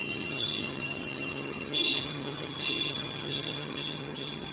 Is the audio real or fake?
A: fake